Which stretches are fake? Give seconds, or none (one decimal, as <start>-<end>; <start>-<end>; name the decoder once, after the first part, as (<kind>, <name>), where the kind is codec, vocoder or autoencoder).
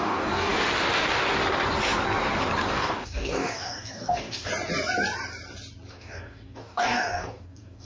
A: 0.0-0.5 (codec, DAC); 2.7-4.5; 5.9-7.8